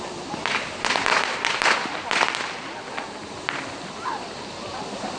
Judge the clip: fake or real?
real